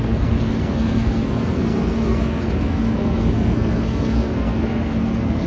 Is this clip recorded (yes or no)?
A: no